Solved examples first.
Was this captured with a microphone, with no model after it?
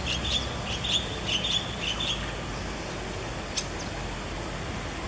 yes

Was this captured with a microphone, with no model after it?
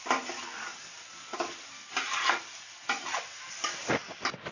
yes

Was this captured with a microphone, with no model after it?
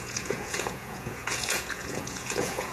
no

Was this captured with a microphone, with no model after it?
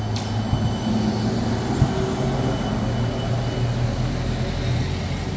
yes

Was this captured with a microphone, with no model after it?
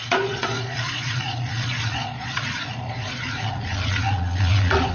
no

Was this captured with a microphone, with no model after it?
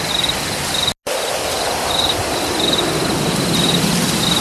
yes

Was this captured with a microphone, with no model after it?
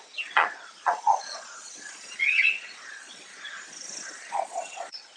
no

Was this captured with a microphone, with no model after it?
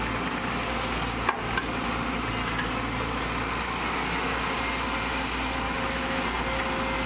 yes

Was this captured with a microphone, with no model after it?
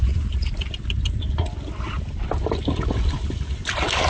yes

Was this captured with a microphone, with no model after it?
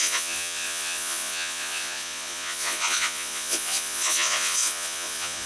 no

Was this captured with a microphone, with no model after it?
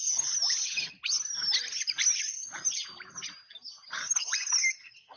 yes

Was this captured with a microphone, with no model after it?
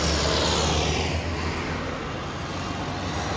yes